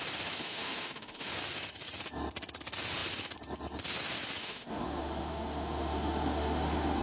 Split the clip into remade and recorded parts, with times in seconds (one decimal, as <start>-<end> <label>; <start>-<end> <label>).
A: 0.0-0.4 recorded; 0.4-1.3 remade; 1.3-4.4 recorded; 4.4-7.0 remade